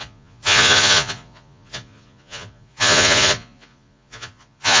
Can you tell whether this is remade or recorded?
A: remade